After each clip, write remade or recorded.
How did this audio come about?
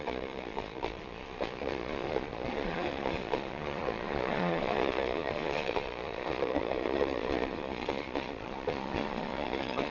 remade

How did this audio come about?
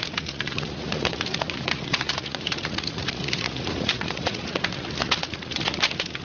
remade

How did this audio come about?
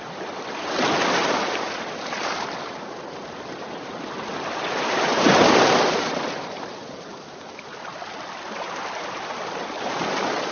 recorded